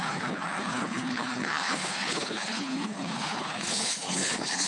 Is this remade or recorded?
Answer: remade